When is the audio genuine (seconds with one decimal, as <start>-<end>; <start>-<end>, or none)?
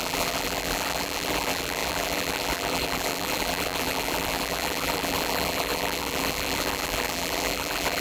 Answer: none